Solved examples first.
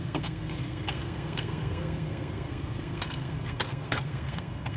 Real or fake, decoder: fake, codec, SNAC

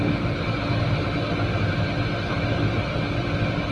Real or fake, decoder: real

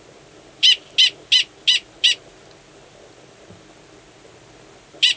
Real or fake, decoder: real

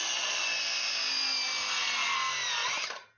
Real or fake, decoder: real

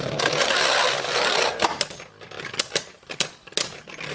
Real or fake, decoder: fake, vocoder, BigVGAN v2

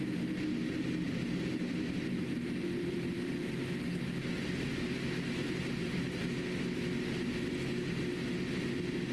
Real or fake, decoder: real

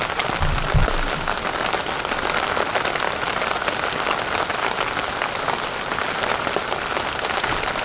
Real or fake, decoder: real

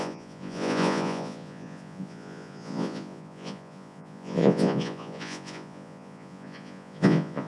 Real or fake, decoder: fake, vocoder, Vocos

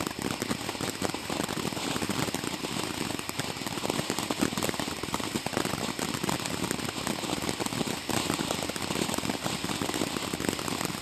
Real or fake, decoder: real